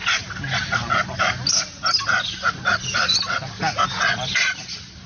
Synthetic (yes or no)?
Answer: no